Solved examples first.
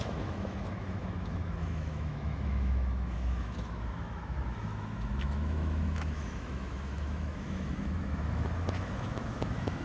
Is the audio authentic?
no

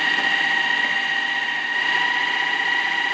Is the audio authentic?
yes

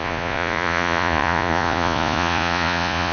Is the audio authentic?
no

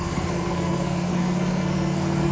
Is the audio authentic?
no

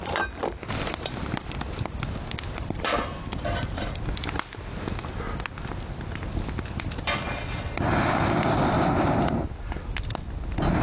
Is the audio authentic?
yes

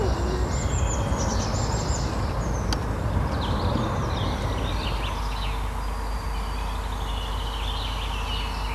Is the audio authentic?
yes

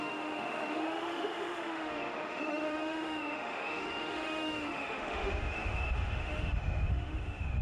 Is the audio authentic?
no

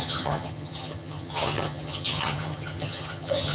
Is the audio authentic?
no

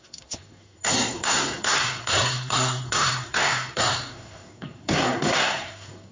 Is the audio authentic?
no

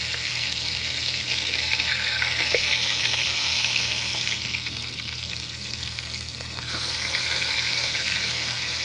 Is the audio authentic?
no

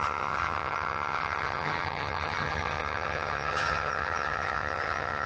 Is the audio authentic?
no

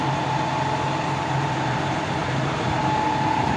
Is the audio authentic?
no